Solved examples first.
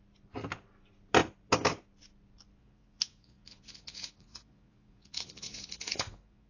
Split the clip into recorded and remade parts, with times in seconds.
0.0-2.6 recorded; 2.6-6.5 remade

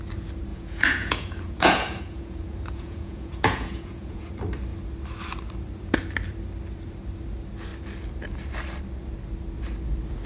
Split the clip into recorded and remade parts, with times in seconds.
0.0-0.5 recorded; 0.5-4.3 remade; 4.3-10.3 recorded

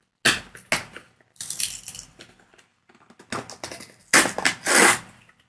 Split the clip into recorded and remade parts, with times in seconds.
0.0-5.5 recorded

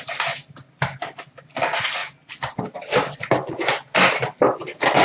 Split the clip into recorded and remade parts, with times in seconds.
0.0-5.0 recorded

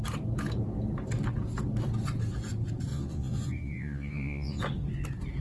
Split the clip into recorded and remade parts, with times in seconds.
0.0-2.9 recorded; 2.9-4.6 remade; 4.6-5.4 recorded

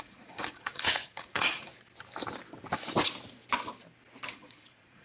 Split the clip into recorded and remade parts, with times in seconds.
0.0-1.7 remade; 1.7-4.3 recorded; 4.3-5.0 remade

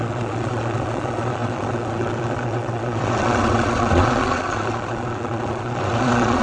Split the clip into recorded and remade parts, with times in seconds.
0.0-6.4 remade